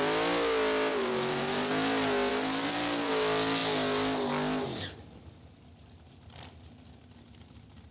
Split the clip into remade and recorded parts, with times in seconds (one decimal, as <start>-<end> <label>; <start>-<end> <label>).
0.0-0.9 recorded; 0.9-1.7 remade; 1.7-2.3 recorded; 2.3-3.1 remade; 3.1-7.9 recorded